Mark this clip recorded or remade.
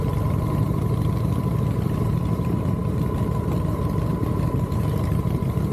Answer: remade